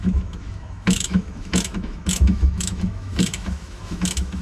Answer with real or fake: fake